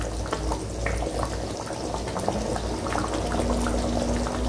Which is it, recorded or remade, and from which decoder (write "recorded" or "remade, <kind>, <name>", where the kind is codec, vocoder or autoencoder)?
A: recorded